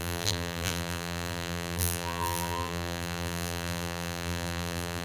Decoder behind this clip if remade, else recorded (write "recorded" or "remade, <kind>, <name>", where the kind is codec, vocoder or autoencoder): remade, vocoder, BigVGAN v2